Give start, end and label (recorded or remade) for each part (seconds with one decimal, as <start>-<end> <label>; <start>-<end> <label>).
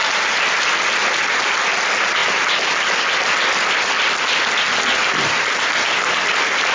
0.0-6.7 recorded